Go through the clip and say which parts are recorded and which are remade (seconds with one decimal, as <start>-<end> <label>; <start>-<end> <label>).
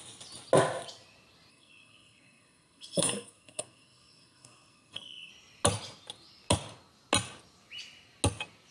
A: 0.0-1.5 recorded; 1.5-5.3 remade; 5.3-8.7 recorded